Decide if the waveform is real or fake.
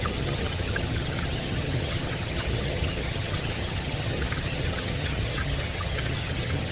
fake